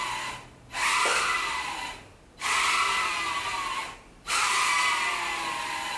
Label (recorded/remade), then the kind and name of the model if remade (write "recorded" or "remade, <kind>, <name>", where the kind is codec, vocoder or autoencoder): recorded